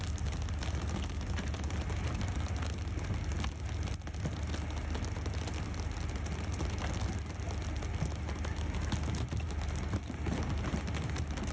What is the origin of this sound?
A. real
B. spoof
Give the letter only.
A